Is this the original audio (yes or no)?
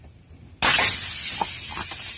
yes